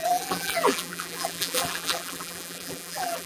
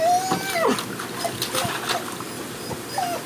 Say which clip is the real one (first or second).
second